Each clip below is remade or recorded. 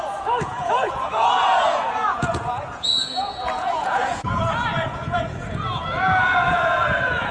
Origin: remade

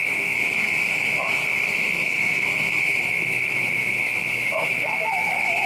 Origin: remade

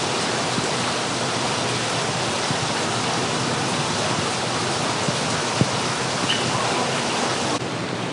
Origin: recorded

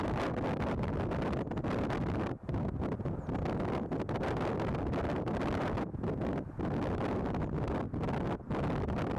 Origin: recorded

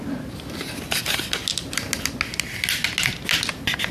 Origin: recorded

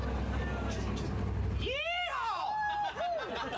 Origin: recorded